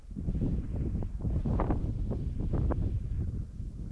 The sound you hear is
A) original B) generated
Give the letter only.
B